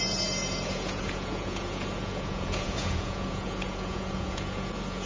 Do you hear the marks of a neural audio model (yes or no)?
yes